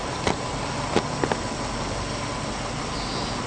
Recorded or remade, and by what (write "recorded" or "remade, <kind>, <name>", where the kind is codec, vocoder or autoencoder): recorded